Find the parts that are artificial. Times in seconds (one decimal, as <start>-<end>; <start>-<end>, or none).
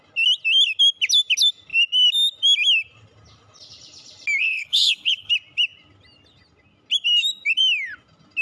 4.4-5.3